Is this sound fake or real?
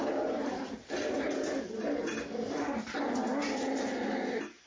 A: real